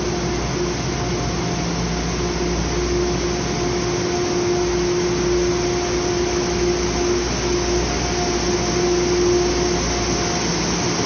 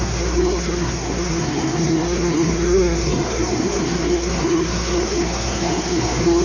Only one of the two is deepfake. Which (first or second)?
second